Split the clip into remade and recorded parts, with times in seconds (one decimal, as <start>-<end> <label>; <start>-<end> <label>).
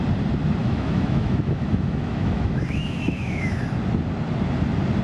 0.0-0.6 recorded; 0.6-3.6 remade; 3.6-5.0 recorded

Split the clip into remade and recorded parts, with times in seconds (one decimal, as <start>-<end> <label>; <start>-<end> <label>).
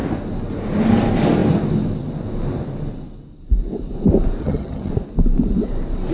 0.0-4.4 recorded; 4.4-4.9 remade; 4.9-6.1 recorded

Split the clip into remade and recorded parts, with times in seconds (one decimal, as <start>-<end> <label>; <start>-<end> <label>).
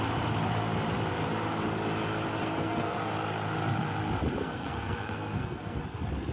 0.0-2.4 recorded; 2.4-3.1 remade; 3.1-4.4 recorded; 4.4-5.8 remade; 5.8-6.3 recorded